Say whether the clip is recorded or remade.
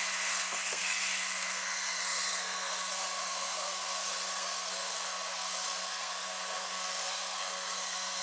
remade